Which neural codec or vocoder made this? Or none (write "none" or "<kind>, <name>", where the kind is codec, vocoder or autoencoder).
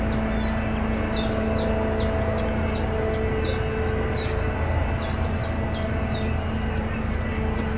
none